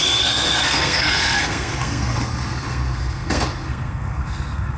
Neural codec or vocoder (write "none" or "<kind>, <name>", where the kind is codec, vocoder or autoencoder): codec, SNAC